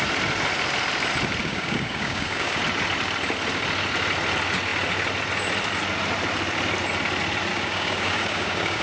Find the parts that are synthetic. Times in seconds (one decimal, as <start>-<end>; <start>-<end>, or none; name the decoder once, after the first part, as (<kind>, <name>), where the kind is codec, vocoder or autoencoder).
1.4-2.6 (codec, DAC); 7.5-8.8